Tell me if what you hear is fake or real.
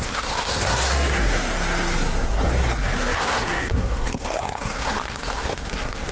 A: fake